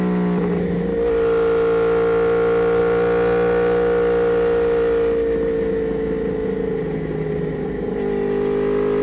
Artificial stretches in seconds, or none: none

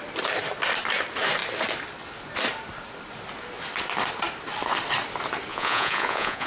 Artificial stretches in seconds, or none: 5.5-6.5 (vocoder, Vocos)

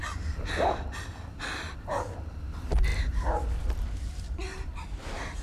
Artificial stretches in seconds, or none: 1.7-5.4 (vocoder, BigVGAN v2)

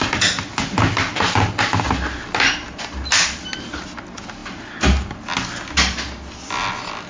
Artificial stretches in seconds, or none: none

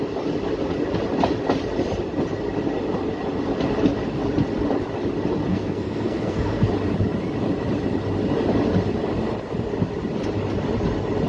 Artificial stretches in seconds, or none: 5.5-6.7 (codec, SNAC)